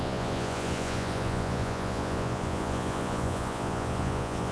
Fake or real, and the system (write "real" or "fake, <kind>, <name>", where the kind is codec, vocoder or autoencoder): fake, vocoder, Vocos